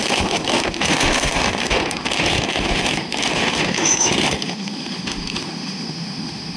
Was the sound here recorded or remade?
remade